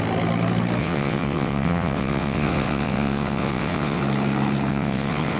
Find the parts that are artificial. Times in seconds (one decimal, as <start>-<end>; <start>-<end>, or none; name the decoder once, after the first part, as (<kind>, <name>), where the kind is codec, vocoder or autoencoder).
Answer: 0.8-4.0 (vocoder, WaveNeXt); 4.7-5.4